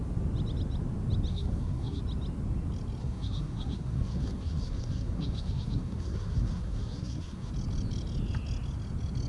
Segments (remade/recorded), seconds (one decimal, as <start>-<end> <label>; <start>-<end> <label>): 0.0-1.3 recorded; 1.3-2.0 remade; 2.0-3.0 recorded; 3.0-7.5 remade; 7.5-9.3 recorded